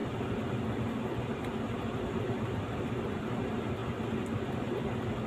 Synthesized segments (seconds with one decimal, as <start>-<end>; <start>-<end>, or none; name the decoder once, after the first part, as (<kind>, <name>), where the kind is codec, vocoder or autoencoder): none